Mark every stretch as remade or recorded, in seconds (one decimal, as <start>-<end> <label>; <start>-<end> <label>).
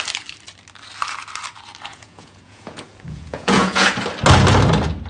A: 0.0-1.9 recorded; 1.9-3.9 remade; 3.9-5.1 recorded